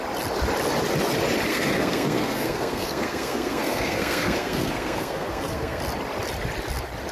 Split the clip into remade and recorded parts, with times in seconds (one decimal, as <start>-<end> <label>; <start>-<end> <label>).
0.0-1.5 recorded; 1.5-5.8 remade; 5.8-7.1 recorded